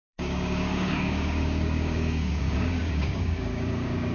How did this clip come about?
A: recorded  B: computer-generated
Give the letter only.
B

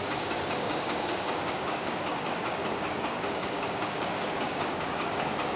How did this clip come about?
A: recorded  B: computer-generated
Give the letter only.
B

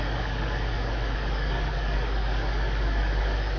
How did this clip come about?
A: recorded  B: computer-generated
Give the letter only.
B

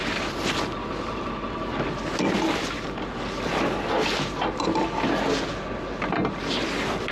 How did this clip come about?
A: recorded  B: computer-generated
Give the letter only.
A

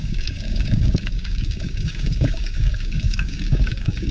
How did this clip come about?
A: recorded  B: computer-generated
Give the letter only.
B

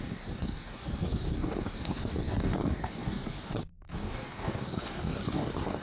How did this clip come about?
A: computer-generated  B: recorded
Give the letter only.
A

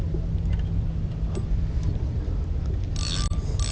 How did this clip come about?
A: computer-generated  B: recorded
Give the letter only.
B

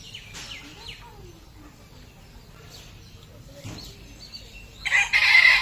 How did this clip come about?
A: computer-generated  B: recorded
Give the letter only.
B